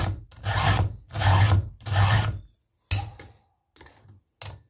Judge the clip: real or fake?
real